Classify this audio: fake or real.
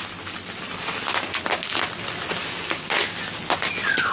real